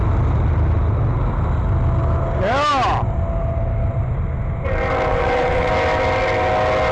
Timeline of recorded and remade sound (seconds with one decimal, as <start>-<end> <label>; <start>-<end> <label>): 0.0-5.1 recorded; 5.1-5.7 remade; 5.7-6.9 recorded